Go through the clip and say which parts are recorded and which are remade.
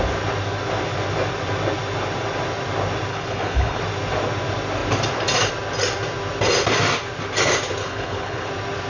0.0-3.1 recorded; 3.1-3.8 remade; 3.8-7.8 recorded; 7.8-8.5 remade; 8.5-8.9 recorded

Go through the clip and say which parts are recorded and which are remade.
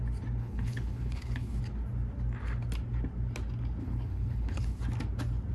0.0-0.4 recorded; 0.4-1.6 remade; 1.6-3.8 recorded; 3.8-4.8 remade; 4.8-5.5 recorded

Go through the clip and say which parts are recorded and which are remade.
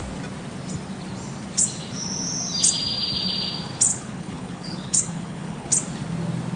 0.0-3.9 recorded; 3.9-5.7 remade; 5.7-6.6 recorded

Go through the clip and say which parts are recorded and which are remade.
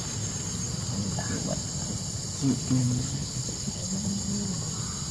0.0-2.8 recorded; 2.8-4.1 remade; 4.1-5.1 recorded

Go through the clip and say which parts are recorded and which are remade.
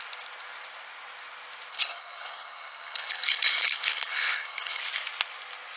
0.0-1.7 recorded; 1.7-4.8 remade; 4.8-5.8 recorded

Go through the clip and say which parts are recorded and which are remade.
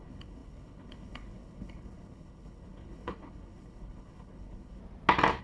0.0-4.8 remade; 4.8-5.4 recorded